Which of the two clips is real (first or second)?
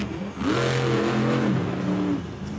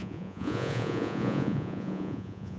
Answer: first